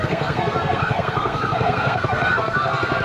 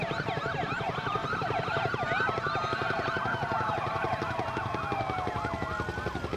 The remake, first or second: first